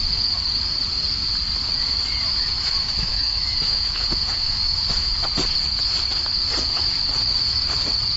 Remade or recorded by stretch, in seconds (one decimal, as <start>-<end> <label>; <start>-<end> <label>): 0.0-2.3 recorded; 2.3-5.2 remade; 5.2-8.2 recorded